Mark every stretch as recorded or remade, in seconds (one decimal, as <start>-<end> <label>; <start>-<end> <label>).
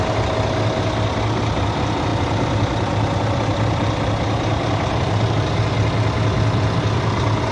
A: 0.0-7.5 recorded